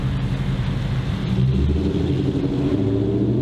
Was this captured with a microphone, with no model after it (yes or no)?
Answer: yes